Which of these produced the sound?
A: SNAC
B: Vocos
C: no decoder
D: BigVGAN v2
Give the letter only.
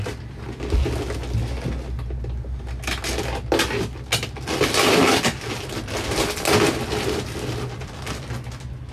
C